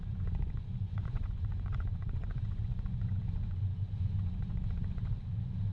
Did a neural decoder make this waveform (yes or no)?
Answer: yes